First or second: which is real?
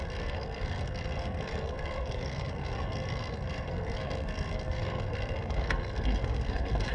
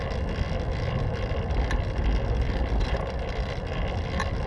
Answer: second